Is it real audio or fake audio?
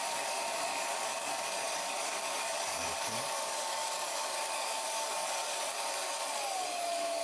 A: fake